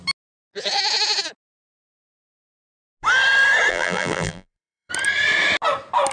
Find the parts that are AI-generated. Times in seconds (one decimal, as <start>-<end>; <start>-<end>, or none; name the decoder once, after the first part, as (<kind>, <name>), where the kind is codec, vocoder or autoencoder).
3.7-4.9 (vocoder, BigVGAN v2)